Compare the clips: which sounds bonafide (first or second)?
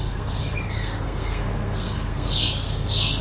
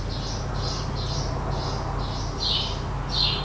second